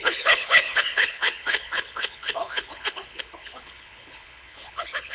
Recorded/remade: remade